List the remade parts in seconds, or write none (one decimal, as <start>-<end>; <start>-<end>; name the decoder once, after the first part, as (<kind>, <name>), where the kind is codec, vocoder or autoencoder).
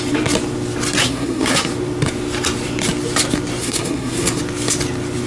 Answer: 1.0-1.7 (codec, SNAC); 3.6-4.4